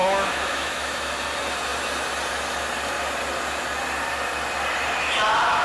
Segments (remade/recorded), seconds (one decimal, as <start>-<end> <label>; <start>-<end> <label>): 0.0-1.2 remade; 1.2-5.6 recorded